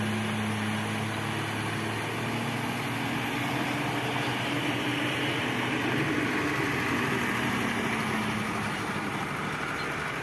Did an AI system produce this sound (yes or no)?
no